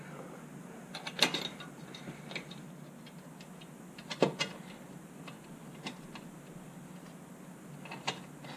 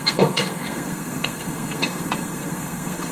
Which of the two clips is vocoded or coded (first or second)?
second